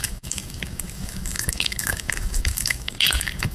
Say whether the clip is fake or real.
fake